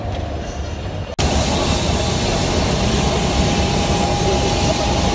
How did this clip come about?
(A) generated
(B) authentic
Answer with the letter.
B